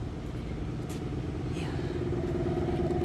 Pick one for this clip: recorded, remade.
recorded